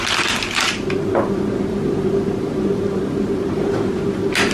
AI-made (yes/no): no